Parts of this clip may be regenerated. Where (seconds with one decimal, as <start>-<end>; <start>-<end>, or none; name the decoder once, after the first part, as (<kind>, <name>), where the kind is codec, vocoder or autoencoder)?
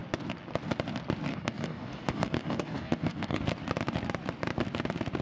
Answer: 1.3-3.4 (codec, DAC)